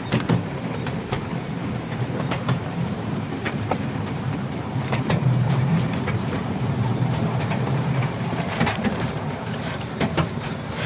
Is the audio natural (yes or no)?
no